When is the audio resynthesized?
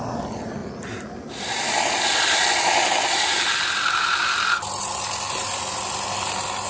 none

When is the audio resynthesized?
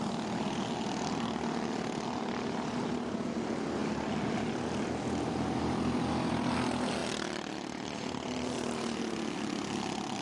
none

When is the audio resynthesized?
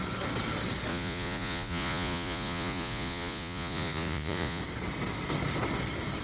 0.9-4.6 (vocoder, Vocos)